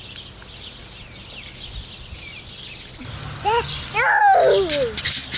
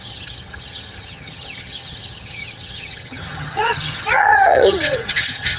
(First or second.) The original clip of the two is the first